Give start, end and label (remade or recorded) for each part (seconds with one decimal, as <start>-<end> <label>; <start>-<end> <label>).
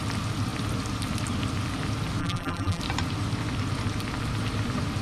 0.0-2.2 recorded; 2.2-2.8 remade; 2.8-5.0 recorded